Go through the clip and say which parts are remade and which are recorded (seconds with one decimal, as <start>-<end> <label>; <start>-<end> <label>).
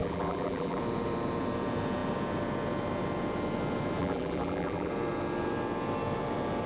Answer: 0.0-0.8 remade; 0.8-4.0 recorded; 4.0-4.9 remade; 4.9-6.7 recorded